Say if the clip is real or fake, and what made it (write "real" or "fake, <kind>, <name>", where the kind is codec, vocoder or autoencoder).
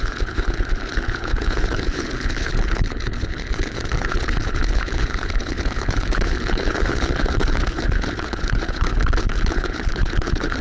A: fake, codec, HILCodec